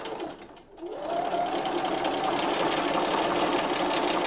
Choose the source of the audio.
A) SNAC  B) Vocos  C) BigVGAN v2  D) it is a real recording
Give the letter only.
D